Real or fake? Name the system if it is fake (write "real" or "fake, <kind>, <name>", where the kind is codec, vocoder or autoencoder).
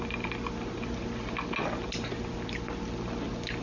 real